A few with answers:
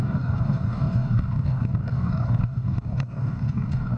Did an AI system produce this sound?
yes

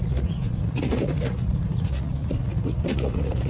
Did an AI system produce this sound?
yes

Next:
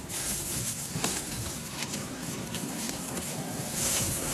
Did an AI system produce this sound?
yes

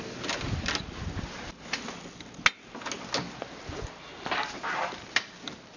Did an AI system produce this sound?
no